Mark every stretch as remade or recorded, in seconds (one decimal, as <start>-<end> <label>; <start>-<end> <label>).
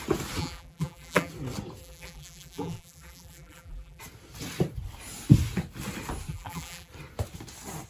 0.0-0.4 recorded; 0.4-1.3 remade; 1.3-1.8 recorded; 1.8-4.0 remade; 4.0-6.3 recorded; 6.3-6.9 remade; 6.9-7.9 recorded